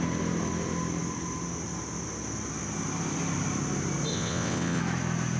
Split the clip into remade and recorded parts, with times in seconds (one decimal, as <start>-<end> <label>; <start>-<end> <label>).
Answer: 0.0-4.1 recorded; 4.1-4.8 remade; 4.8-5.4 recorded